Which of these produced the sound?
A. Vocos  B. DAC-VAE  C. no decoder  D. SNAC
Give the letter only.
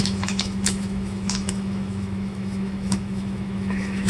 B